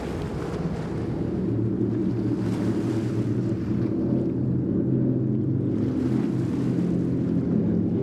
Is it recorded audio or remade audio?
recorded